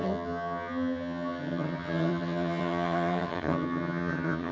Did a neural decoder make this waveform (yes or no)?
yes